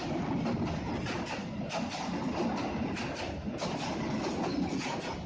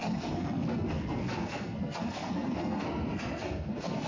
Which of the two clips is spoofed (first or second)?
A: second